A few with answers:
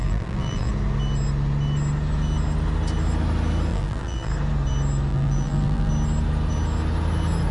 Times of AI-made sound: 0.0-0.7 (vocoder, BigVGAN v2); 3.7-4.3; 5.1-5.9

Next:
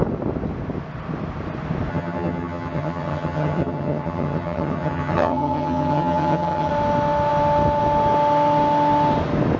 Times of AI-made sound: 1.9-6.7 (vocoder, HiFi-GAN)

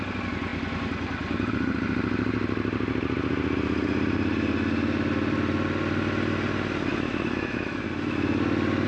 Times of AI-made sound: 6.9-7.8 (autoencoder, DAC-VAE)

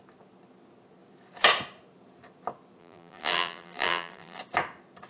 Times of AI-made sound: 2.8-4.4 (vocoder, BigVGAN v2)

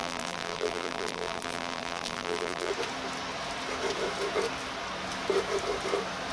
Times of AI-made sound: 0.0-2.7 (vocoder, BigVGAN v2)

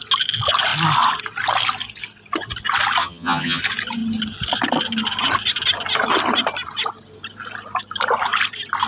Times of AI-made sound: 3.0-3.6 (vocoder, HiFi-GAN)

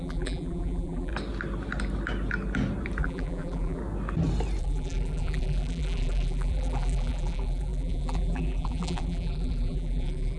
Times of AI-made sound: 0.0-1.1 (vocoder, BigVGAN v2); 3.0-3.8; 4.6-10.4

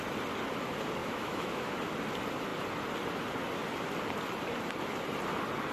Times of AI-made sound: 1.0-1.7 (autoencoder, DAC-VAE)